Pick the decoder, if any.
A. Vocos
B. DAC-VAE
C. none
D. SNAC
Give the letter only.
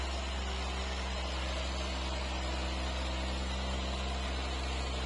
C